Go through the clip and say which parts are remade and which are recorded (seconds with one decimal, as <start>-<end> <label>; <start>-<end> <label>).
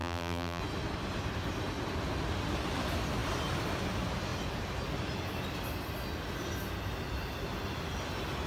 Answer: 0.0-0.6 remade; 0.6-8.5 recorded